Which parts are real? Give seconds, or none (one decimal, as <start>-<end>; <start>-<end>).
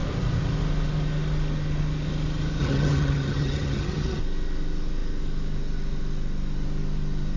0.0-2.6; 4.2-7.4